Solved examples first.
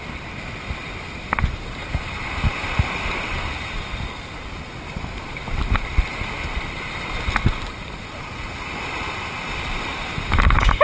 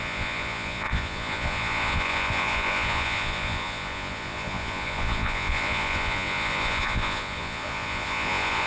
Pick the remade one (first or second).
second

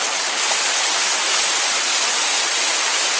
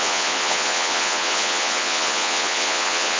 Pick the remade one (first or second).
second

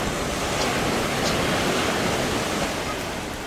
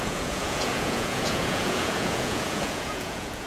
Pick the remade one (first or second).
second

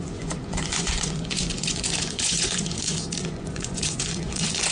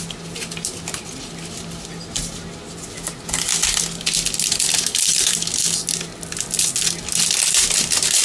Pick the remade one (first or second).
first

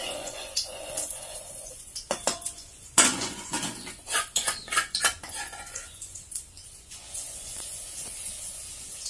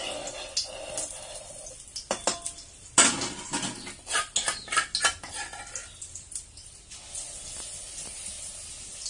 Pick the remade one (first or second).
first